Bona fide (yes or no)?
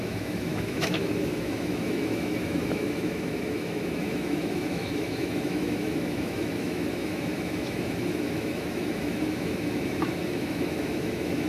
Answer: no